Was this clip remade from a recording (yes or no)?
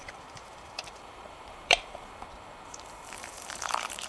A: yes